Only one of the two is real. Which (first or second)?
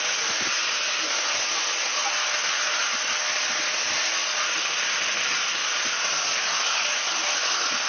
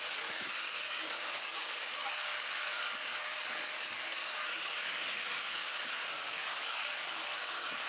first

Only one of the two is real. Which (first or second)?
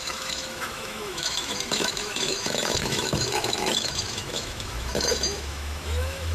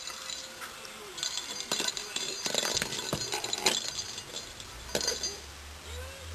second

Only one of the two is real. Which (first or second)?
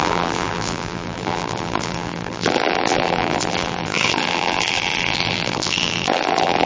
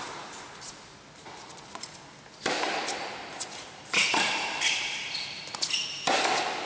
second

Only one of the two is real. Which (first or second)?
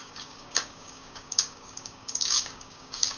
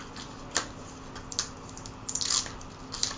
second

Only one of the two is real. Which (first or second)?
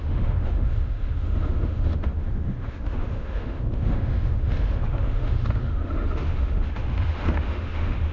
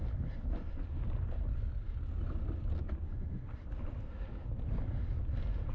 second